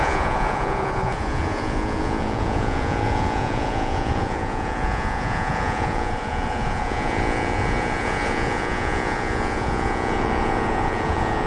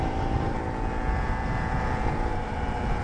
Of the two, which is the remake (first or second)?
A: first